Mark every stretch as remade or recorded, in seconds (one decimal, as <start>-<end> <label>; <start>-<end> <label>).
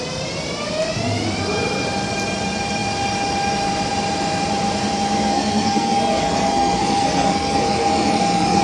0.0-5.3 recorded; 5.3-8.6 remade